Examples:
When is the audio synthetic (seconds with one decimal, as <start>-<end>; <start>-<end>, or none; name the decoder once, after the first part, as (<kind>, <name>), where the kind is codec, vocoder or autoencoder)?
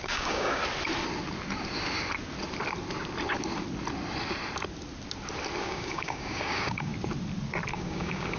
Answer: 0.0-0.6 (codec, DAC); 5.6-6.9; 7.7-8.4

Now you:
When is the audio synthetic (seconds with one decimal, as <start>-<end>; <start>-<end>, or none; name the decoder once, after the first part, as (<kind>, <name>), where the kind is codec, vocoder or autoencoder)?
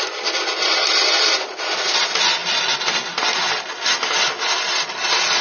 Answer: none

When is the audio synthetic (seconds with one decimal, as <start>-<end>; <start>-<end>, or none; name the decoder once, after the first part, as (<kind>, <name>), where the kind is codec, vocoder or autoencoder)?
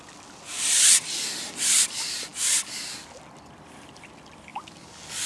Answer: 4.5-5.3 (codec, DAC)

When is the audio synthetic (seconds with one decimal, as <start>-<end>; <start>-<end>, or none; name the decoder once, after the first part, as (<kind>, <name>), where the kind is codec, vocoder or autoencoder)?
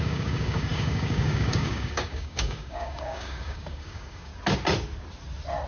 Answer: 0.0-4.3 (codec, DAC)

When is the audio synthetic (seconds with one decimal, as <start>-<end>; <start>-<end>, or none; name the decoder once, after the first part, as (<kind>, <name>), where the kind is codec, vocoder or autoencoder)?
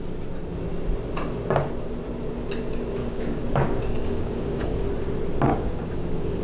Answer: 3.0-4.8 (codec, DAC); 5.5-6.4